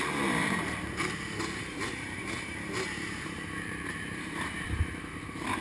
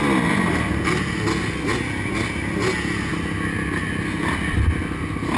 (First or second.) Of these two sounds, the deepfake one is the first